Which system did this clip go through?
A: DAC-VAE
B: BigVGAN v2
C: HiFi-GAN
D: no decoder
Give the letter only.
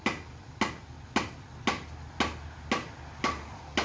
D